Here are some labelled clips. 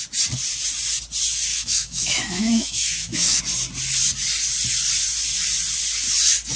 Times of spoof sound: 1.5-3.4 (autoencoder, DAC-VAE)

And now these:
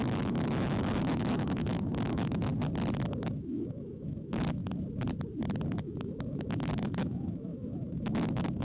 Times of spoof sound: 0.0-2.5 (autoencoder, DAC-VAE); 3.1-4.6; 5.8-8.6